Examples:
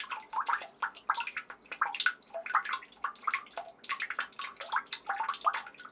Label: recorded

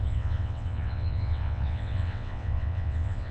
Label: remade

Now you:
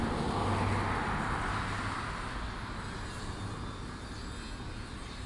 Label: recorded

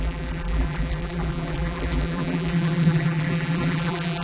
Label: remade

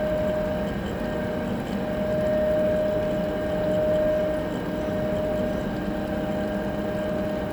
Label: recorded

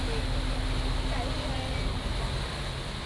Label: recorded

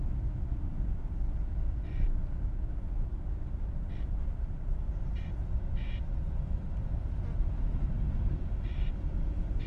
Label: recorded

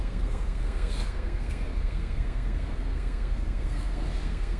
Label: remade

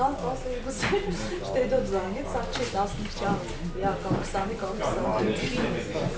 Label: recorded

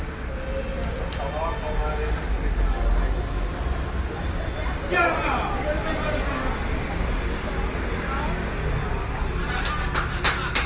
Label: recorded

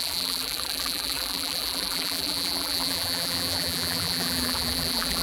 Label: remade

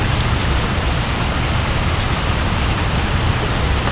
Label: recorded